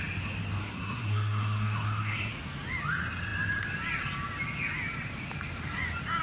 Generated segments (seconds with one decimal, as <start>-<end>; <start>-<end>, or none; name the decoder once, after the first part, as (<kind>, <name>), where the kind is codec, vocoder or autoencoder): 0.6-2.3 (codec, SNAC)